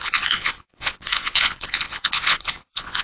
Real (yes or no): no